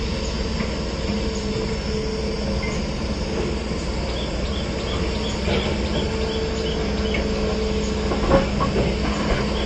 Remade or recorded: recorded